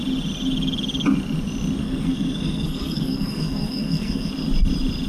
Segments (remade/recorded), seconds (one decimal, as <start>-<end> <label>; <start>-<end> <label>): 0.0-1.8 recorded; 1.8-4.3 remade; 4.3-5.1 recorded